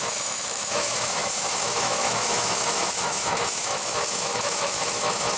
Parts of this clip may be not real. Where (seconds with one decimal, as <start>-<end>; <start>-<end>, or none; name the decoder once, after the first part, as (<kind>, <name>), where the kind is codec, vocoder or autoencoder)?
0.0-5.4 (autoencoder, DAC-VAE)